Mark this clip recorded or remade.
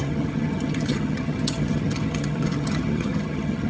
remade